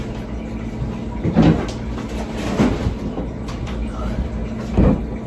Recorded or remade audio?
recorded